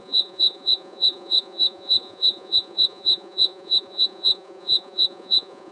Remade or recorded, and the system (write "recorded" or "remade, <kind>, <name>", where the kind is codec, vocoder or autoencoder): remade, vocoder, Vocos